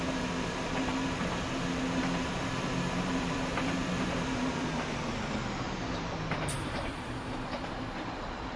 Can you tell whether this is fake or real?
fake